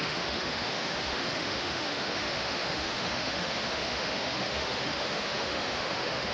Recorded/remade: remade